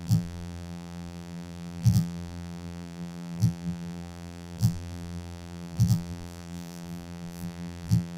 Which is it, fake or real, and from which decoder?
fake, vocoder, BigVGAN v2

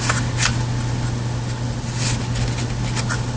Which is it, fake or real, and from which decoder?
real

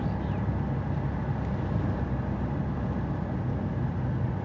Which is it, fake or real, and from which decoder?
real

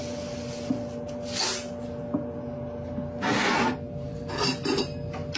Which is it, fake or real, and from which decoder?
real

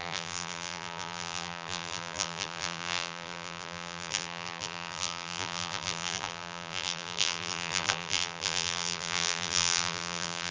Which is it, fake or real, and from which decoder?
fake, vocoder, BigVGAN v2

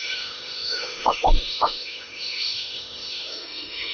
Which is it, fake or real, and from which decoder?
fake, autoencoder, DAC-VAE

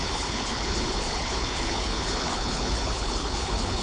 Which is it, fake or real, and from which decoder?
fake, codec, HILCodec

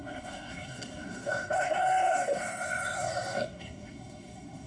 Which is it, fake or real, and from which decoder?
fake, codec, SNAC